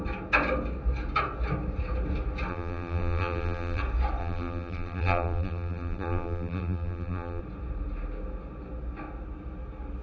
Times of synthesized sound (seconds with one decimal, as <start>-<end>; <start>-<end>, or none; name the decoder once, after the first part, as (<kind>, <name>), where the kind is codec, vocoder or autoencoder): 2.5-3.8 (vocoder, BigVGAN v2); 4.2-7.4